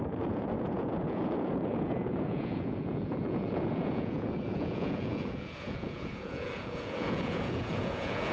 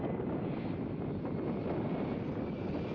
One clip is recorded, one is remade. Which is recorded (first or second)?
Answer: second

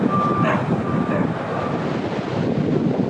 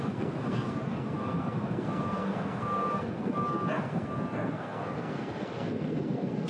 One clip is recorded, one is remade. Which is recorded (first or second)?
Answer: first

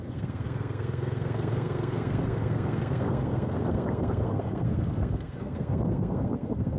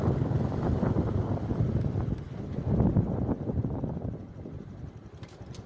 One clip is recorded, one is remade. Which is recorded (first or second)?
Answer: second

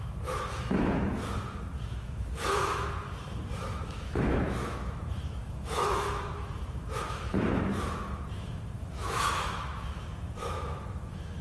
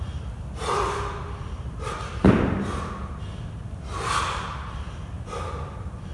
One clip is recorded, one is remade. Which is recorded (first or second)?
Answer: second